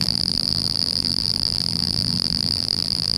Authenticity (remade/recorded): remade